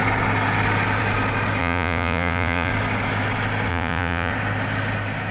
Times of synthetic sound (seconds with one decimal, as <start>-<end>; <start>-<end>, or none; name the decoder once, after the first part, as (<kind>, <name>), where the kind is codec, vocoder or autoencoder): 1.6-2.7 (vocoder, Vocos); 3.7-4.3